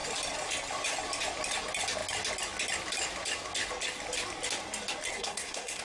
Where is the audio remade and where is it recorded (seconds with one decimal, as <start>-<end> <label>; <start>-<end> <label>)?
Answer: 0.0-5.1 recorded; 5.1-5.8 remade